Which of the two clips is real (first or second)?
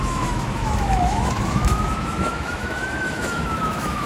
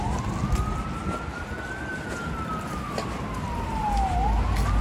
second